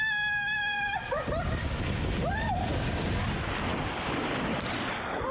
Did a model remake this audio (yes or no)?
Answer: no